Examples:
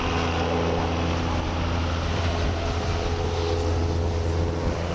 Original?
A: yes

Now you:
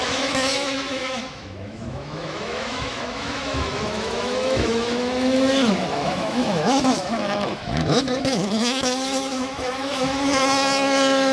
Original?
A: no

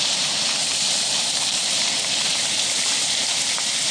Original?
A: no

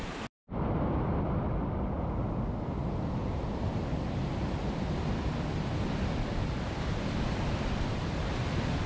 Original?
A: yes